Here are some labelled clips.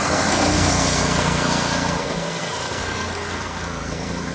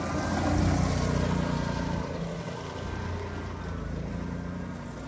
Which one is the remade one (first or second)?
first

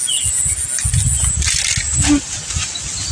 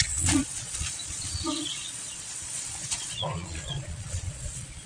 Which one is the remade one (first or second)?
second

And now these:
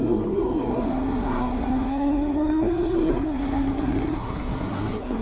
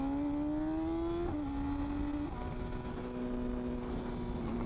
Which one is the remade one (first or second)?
first